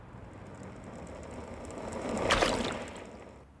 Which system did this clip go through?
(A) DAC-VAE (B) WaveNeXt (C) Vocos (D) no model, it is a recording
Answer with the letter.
D